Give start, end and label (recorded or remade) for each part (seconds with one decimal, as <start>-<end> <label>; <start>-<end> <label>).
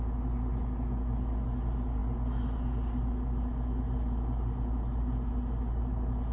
0.0-6.3 recorded